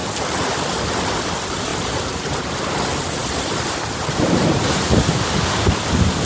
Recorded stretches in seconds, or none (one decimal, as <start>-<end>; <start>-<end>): 0.0-1.7; 2.6-6.3

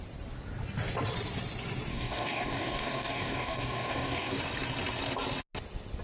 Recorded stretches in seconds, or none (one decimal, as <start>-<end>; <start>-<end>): 0.0-1.9; 4.3-6.0